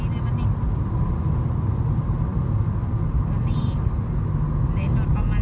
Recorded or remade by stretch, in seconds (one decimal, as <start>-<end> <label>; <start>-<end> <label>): 0.0-5.4 recorded